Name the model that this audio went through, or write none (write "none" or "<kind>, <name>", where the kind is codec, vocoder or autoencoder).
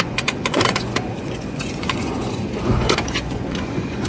vocoder, Vocos